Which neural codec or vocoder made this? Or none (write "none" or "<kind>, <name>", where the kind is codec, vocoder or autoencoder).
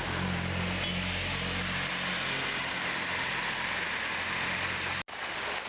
none